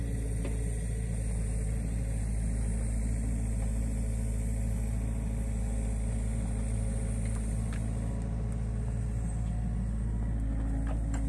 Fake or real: real